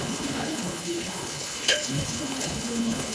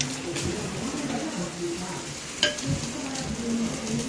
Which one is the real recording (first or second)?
second